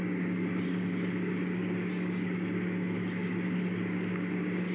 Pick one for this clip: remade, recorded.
remade